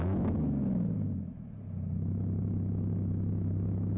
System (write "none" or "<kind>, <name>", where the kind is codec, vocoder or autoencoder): autoencoder, DAC-VAE